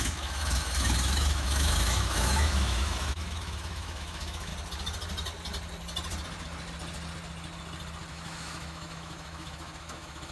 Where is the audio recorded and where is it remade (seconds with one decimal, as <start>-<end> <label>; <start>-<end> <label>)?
0.0-4.5 remade; 4.5-8.1 recorded; 8.1-10.3 remade